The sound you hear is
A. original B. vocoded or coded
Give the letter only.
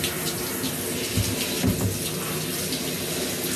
A